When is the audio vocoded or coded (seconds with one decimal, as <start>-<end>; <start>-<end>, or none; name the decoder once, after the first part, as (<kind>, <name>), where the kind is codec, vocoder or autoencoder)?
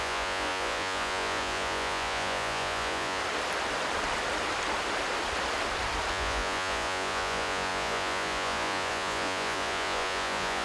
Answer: 0.0-3.2 (vocoder, Vocos); 6.1-10.6